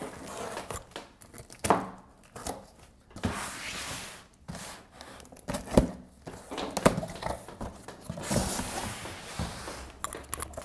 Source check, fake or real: real